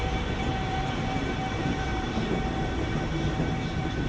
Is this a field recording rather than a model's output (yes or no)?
no